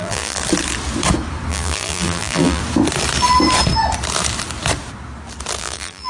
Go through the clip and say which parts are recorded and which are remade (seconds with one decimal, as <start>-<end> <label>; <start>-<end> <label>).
0.0-0.4 remade; 0.4-1.5 recorded; 1.5-2.6 remade; 2.6-5.6 recorded; 5.6-6.1 remade